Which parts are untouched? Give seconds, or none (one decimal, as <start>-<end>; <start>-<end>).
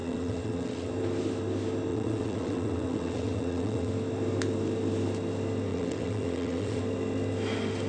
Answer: 0.9-1.9; 3.9-5.7; 6.8-7.9